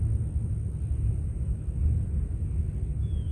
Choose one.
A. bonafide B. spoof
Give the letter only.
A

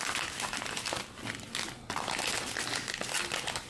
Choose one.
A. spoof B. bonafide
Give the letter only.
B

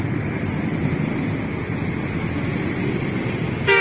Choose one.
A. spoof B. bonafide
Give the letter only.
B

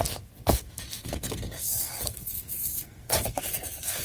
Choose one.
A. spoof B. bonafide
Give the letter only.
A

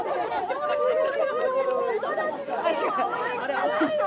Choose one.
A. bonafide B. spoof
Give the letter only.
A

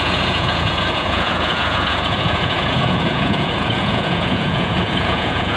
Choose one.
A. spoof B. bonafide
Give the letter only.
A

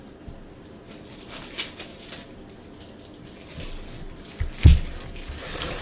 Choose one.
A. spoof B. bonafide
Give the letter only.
B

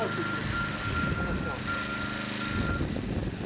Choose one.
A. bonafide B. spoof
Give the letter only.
A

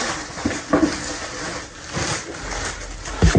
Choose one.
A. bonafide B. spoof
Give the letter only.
A